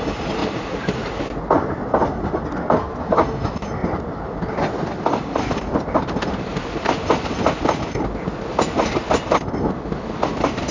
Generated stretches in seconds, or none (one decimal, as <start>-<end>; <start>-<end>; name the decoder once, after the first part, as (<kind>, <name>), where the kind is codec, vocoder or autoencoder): 0.4-1.3 (vocoder, BigVGAN v2); 3.8-8.9